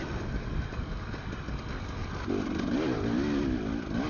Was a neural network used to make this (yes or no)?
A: no